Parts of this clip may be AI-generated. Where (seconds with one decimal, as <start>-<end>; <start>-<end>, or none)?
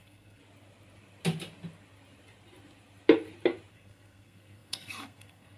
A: 0.0-0.4; 3.7-5.6